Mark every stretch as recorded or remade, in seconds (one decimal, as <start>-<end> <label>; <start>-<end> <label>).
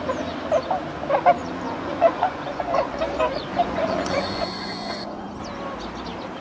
0.0-1.4 recorded; 1.4-3.0 remade; 3.0-3.5 recorded; 3.5-5.3 remade; 5.3-6.4 recorded